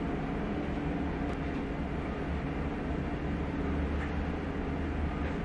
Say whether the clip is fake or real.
real